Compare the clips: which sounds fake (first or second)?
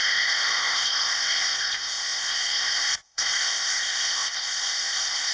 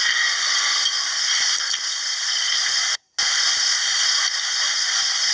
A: first